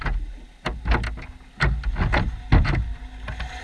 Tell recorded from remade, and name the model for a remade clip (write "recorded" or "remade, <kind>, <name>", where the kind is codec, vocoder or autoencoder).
recorded